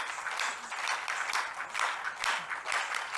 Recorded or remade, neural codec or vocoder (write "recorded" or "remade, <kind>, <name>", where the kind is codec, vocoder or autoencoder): recorded